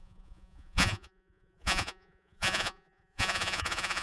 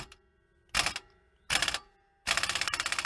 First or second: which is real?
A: second